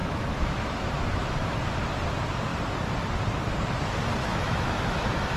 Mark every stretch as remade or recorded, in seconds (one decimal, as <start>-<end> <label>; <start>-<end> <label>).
0.0-1.6 remade; 1.6-4.2 recorded; 4.2-5.4 remade